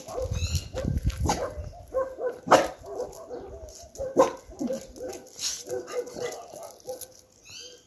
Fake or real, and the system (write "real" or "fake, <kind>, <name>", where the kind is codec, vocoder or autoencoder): real